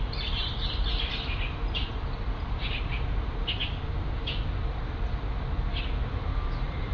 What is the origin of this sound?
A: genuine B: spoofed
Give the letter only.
A